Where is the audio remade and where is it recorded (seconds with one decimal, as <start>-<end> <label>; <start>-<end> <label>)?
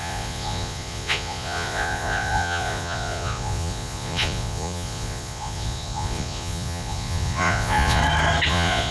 0.0-8.0 remade; 8.0-8.5 recorded; 8.5-8.9 remade